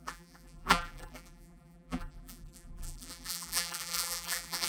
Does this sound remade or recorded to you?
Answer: remade